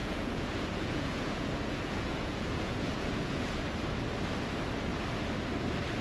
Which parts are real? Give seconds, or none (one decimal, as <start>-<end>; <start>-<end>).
3.6-6.0